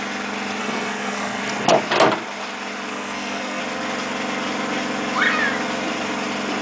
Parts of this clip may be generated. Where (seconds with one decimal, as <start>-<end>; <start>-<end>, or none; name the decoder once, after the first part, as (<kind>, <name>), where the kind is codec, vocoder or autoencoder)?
0.6-1.4 (codec, SNAC); 2.9-3.6